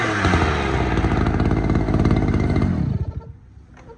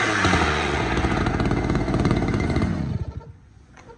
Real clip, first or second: first